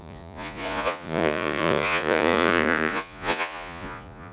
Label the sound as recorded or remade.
remade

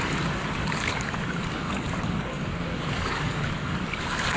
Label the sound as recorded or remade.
remade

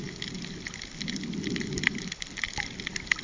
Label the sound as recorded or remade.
recorded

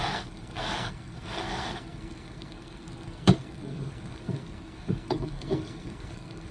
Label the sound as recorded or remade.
remade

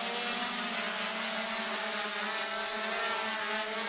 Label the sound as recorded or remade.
recorded